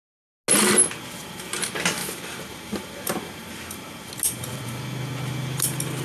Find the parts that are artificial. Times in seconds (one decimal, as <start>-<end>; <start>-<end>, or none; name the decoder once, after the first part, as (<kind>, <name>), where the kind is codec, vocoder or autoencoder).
2.0-4.0 (vocoder, BigVGAN v2)